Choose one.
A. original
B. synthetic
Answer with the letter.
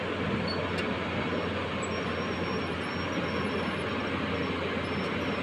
A